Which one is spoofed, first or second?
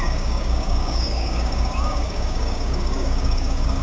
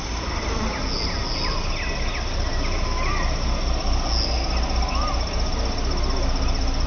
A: first